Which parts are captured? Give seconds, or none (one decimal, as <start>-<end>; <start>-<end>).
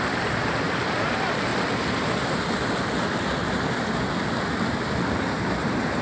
1.5-5.1